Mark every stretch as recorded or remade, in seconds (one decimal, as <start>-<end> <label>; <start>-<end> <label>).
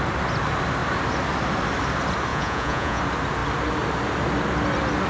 0.0-2.3 recorded; 2.3-3.0 remade; 3.0-5.1 recorded